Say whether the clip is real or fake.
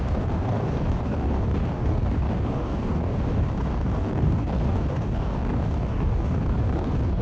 fake